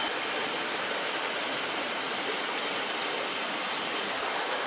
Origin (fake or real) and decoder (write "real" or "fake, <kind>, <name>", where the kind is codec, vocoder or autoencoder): real